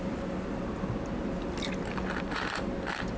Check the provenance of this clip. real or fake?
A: real